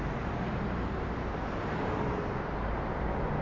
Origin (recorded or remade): recorded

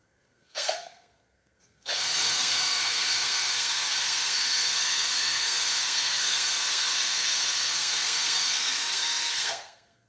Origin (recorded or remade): remade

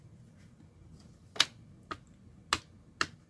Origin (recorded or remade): recorded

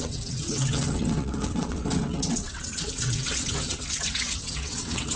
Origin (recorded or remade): remade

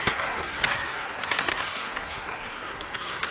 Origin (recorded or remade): remade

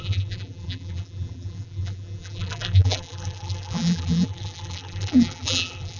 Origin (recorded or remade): remade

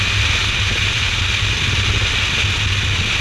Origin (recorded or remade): recorded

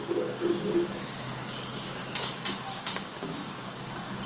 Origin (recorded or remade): remade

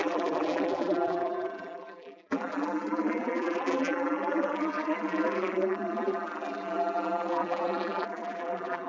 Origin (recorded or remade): remade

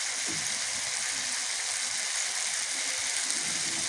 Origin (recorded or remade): recorded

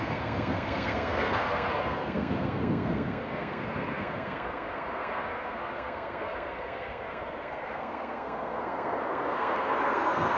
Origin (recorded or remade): remade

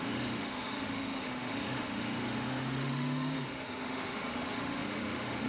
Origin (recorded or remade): remade